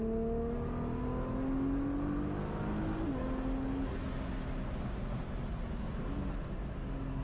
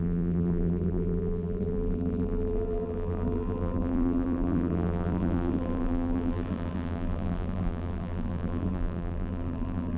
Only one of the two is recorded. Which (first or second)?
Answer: first